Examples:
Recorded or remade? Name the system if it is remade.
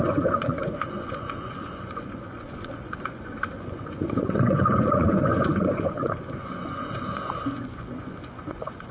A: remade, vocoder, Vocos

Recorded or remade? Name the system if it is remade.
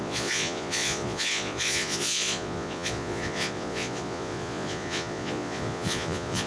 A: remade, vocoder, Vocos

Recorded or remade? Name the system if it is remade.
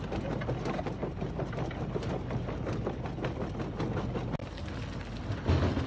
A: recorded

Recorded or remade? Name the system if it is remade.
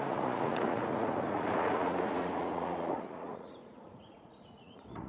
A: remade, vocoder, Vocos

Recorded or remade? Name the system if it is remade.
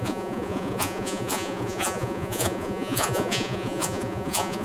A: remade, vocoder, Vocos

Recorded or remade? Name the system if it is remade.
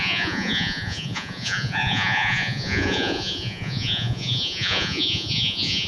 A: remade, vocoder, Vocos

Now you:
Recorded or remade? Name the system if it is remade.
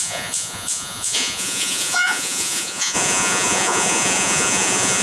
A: remade, vocoder, Vocos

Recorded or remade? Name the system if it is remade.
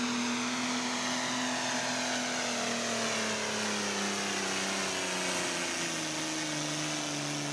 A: recorded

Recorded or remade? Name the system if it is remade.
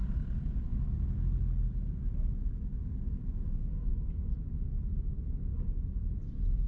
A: recorded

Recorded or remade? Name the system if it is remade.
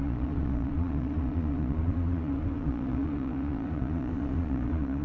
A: remade, vocoder, Vocos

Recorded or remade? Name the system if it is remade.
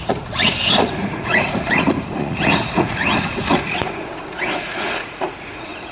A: remade, vocoder, Vocos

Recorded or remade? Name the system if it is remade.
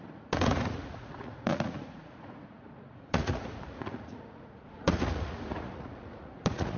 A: remade, vocoder, Vocos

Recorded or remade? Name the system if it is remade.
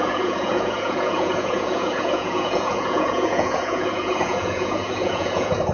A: remade, vocoder, Vocos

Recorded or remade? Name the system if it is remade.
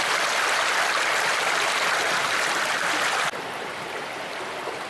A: recorded